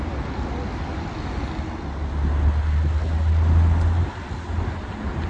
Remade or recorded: recorded